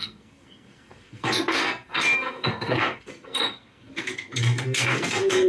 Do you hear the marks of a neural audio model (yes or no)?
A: yes